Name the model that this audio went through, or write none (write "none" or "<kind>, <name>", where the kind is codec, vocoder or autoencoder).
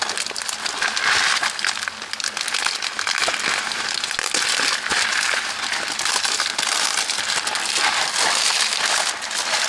none